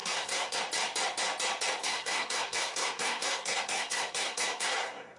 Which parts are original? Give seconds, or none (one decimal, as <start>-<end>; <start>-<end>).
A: 0.6-1.8